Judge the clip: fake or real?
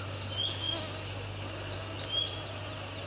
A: real